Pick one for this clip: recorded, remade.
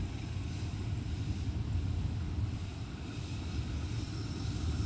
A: recorded